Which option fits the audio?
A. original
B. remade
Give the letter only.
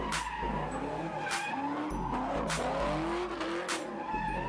A